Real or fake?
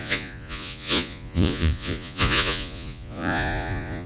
fake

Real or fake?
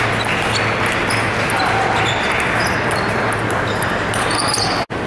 real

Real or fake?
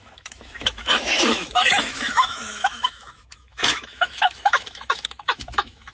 fake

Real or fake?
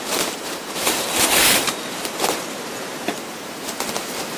fake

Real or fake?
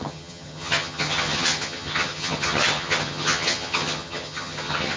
fake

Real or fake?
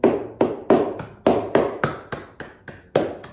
real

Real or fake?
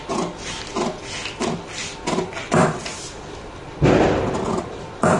real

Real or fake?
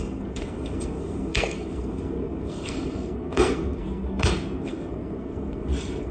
fake